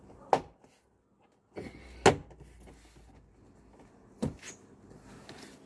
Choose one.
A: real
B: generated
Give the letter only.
A